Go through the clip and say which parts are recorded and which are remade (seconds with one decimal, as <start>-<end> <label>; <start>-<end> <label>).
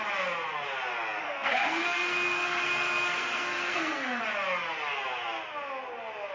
0.0-1.2 recorded; 1.2-4.2 remade; 4.2-6.3 recorded